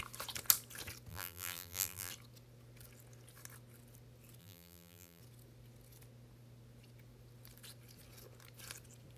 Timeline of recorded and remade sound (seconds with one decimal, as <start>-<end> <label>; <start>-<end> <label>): 0.0-1.1 recorded; 1.1-2.1 remade; 2.1-4.4 recorded; 4.4-5.2 remade; 5.2-9.2 recorded